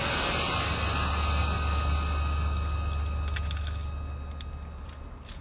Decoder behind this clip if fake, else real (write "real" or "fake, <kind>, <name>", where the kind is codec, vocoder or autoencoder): real